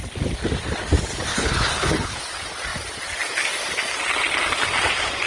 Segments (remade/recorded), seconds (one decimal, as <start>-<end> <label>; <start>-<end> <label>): 0.0-1.3 recorded; 1.3-2.2 remade; 2.2-5.3 recorded